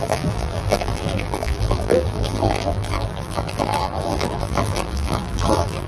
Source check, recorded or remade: remade